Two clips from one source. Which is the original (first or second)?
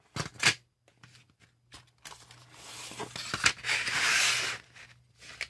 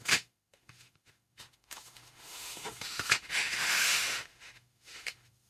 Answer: first